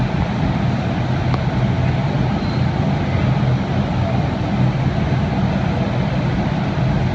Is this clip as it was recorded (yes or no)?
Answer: yes